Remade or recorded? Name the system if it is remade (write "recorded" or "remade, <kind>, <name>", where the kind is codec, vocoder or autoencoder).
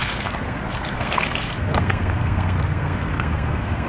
remade, codec, SNAC